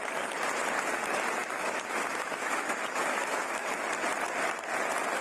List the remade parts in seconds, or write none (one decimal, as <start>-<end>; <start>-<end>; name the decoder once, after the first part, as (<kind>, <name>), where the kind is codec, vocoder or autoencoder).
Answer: 1.4-3.8 (autoencoder, DAC-VAE)